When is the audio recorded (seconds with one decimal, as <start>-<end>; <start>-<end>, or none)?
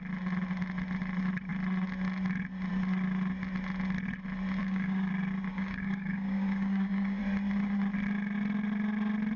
0.0-4.6; 5.1-5.5; 7.2-9.4